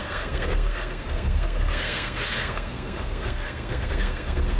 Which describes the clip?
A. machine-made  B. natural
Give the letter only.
A